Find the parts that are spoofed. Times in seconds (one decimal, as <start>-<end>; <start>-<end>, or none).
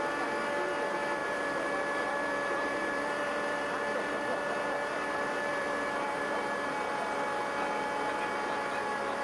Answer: 1.2-3.6; 5.5-6.7